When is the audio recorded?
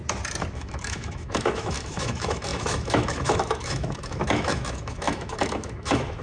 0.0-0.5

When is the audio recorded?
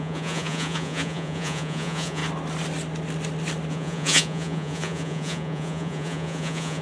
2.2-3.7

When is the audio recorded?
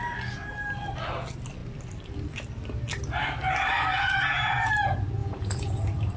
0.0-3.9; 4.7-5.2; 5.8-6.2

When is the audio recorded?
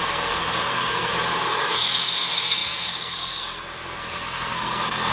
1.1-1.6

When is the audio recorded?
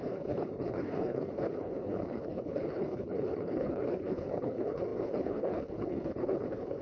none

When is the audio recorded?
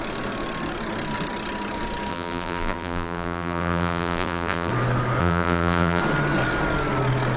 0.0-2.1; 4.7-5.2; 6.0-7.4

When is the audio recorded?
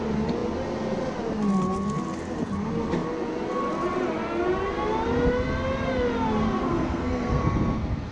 0.0-6.6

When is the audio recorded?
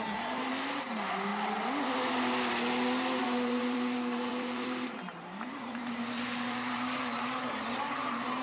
1.3-3.2